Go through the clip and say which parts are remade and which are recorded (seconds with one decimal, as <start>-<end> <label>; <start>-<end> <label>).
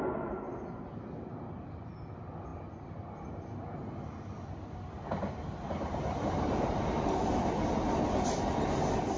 0.0-9.2 recorded